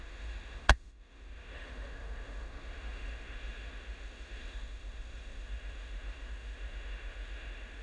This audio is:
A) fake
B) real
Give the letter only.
A